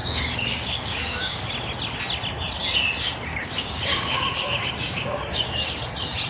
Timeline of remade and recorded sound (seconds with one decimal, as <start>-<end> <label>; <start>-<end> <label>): 0.0-1.5 remade; 1.5-3.4 recorded; 3.4-5.8 remade; 5.8-6.3 recorded